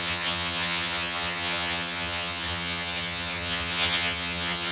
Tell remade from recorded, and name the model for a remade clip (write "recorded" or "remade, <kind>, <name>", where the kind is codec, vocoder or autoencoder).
remade, vocoder, HiFi-GAN